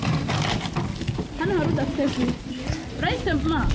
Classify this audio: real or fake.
real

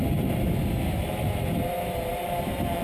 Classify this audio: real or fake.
fake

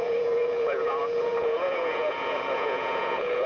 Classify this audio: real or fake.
fake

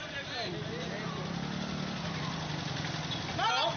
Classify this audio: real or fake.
real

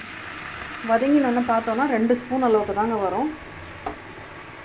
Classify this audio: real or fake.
real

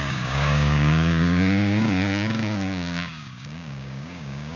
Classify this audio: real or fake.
fake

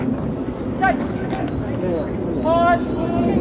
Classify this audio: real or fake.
real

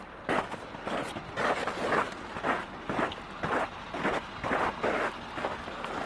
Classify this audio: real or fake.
real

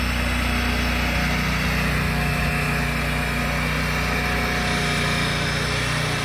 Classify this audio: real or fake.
real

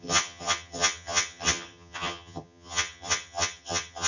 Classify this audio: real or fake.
fake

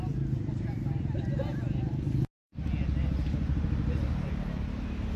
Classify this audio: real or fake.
real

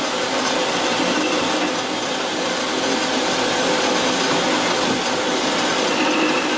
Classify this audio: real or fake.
real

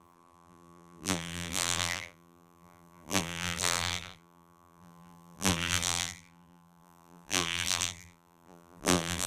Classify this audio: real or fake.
fake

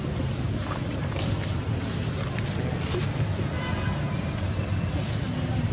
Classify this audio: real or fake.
real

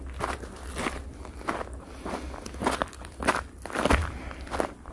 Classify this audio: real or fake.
real